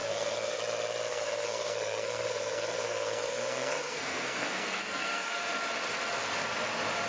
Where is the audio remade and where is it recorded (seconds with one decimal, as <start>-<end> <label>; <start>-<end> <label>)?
0.0-0.6 remade; 0.6-1.1 recorded; 1.1-5.4 remade; 5.4-7.1 recorded